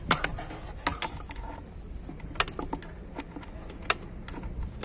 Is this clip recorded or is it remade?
recorded